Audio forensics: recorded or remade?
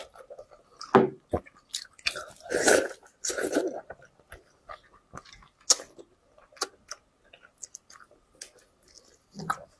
recorded